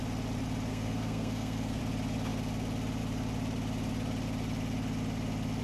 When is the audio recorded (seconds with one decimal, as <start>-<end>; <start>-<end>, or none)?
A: 0.0-0.7; 1.8-5.6